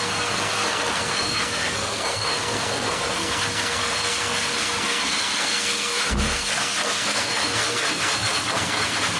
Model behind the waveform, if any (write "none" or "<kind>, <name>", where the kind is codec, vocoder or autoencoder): codec, SNAC